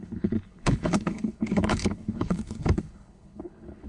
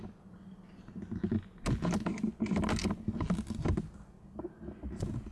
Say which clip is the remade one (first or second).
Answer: first